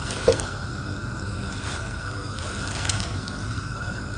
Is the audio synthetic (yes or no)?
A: yes